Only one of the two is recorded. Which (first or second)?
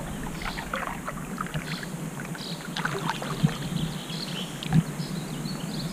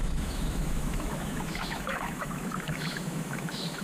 first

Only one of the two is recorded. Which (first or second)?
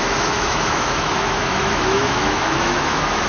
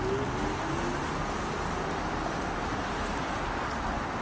second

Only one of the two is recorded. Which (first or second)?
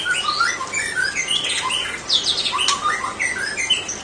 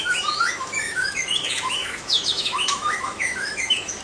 first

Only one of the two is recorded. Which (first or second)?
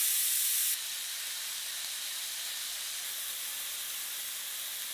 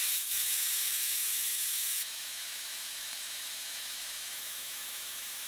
first